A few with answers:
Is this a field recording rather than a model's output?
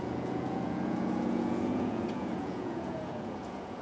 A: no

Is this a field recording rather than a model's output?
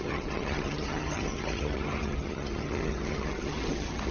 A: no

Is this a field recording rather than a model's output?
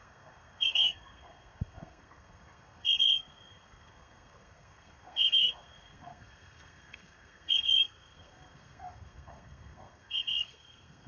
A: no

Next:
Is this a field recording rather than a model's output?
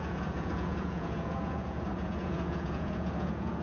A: no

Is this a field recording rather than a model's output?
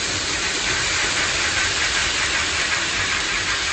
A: no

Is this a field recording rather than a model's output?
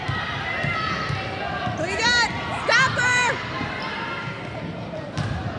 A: yes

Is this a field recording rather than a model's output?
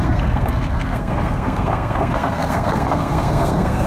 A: no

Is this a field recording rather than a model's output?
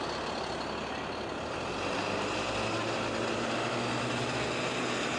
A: yes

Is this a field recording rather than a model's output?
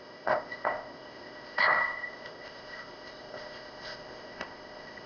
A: no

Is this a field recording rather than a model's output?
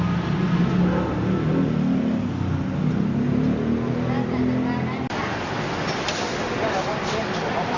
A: yes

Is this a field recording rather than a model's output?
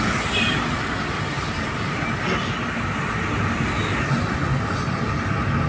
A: yes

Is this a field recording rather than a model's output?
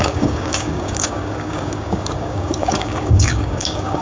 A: no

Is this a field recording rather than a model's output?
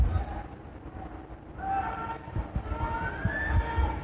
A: yes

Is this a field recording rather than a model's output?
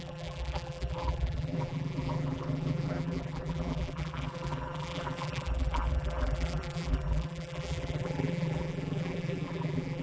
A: no